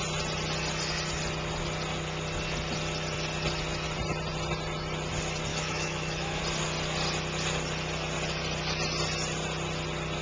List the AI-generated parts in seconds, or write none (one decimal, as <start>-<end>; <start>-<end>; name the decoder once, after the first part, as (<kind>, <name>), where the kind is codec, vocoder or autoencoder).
5.5-6.4 (autoencoder, DAC-VAE)